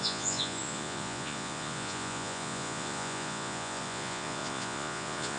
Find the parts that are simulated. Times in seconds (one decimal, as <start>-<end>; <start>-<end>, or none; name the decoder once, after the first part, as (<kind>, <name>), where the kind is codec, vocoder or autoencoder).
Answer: 0.0-5.4 (vocoder, Vocos)